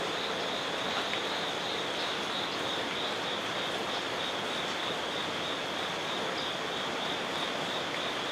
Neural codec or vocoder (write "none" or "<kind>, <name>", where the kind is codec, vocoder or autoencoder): none